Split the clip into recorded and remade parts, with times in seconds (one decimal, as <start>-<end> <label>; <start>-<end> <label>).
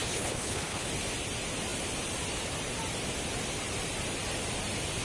0.0-0.9 remade; 0.9-5.0 recorded